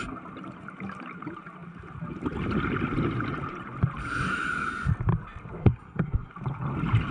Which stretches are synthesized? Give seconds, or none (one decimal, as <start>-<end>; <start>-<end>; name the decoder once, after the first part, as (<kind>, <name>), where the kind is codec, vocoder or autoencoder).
5.6-6.3 (codec, SNAC)